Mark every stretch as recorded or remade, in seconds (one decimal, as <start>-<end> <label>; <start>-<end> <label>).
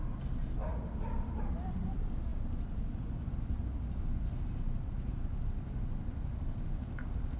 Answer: 0.0-7.4 recorded